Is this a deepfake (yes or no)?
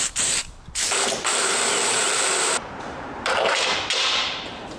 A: yes